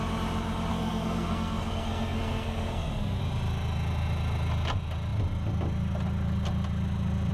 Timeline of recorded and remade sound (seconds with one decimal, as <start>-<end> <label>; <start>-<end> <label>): 0.0-0.7 recorded; 0.7-3.2 remade; 3.2-7.3 recorded